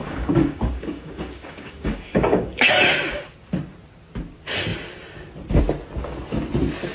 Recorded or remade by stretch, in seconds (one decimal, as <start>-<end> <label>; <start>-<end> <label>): 0.0-2.7 remade; 2.7-6.9 recorded